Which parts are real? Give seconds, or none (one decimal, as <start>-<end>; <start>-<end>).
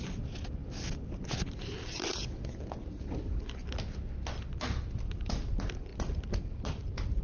0.0-7.2